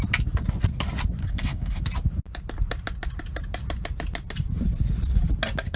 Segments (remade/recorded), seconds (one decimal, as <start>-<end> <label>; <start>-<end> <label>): 0.0-1.2 recorded; 1.2-1.8 remade; 1.8-5.8 recorded